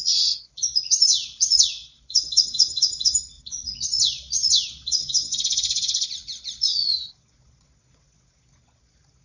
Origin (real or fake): fake